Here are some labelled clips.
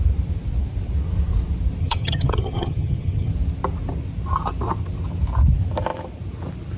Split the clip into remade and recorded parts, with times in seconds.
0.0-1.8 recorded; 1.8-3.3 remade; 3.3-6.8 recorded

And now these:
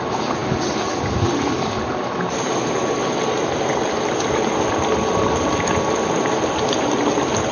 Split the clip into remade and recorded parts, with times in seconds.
0.0-7.5 recorded

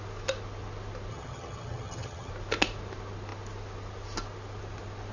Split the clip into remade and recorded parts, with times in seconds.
0.0-1.1 recorded; 1.1-2.3 remade; 2.3-5.1 recorded

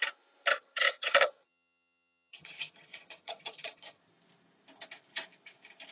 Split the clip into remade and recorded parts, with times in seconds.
0.0-0.5 recorded; 0.5-4.0 remade; 4.0-5.9 recorded

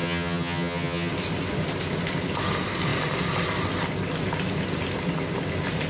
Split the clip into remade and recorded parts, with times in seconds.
0.0-1.1 remade; 1.1-5.9 recorded

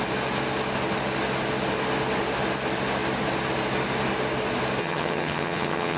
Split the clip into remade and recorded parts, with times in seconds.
0.0-4.8 recorded; 4.8-6.0 remade

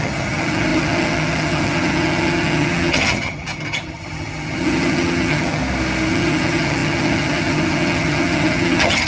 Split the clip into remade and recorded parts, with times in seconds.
0.0-5.6 remade; 5.6-6.1 recorded; 6.1-9.1 remade